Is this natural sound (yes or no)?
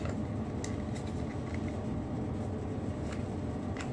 yes